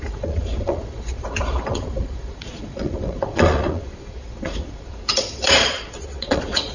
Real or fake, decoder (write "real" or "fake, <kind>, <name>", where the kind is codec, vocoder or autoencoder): fake, vocoder, Vocos